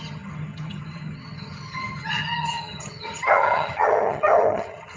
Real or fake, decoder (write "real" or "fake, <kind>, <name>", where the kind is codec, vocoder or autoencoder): fake, vocoder, HiFi-GAN